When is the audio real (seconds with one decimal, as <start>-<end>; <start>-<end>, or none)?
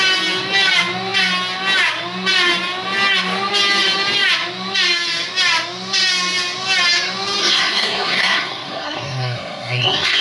0.0-7.4